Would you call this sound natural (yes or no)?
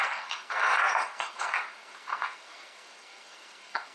no